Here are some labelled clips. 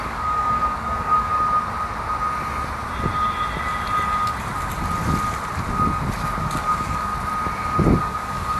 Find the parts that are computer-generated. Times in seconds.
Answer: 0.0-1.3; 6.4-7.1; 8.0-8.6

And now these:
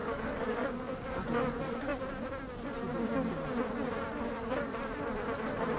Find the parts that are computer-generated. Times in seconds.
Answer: 0.0-1.9

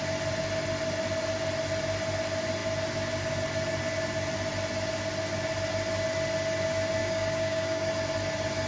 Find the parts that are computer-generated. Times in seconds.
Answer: 7.0-7.9

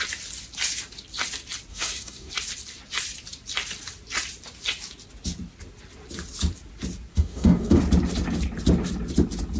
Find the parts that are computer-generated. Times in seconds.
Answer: 1.7-2.3; 7.1-7.8

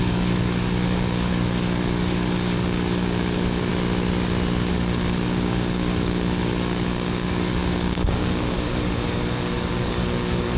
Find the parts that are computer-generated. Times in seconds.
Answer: 0.0-3.7; 4.7-10.6